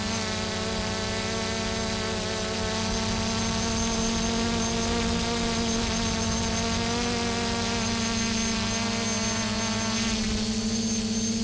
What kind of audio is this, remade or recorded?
recorded